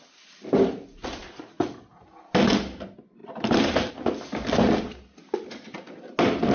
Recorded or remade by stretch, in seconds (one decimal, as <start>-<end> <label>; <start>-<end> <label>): 0.0-3.2 recorded; 3.2-3.9 remade; 3.9-6.5 recorded